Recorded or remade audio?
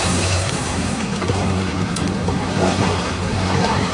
remade